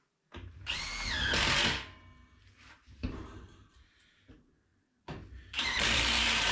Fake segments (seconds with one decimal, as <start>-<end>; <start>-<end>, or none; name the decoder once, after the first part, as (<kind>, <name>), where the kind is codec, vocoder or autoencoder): 0.0-0.9 (vocoder, BigVGAN v2); 2.4-4.7; 5.2-6.5